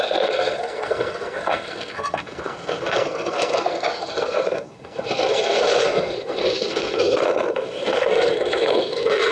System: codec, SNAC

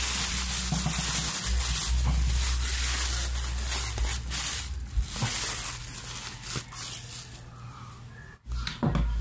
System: none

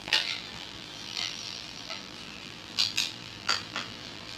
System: vocoder, BigVGAN v2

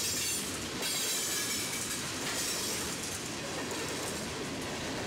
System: none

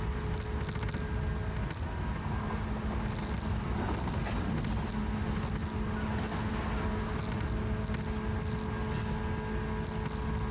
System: none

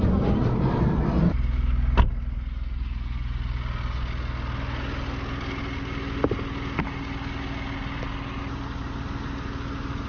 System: none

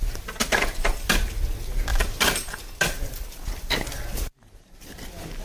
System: none